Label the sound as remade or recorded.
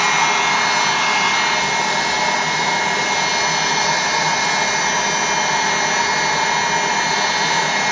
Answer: recorded